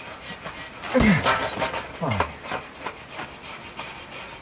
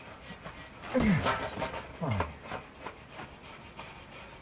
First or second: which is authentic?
first